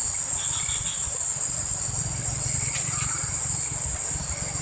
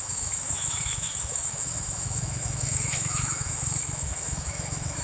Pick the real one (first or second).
first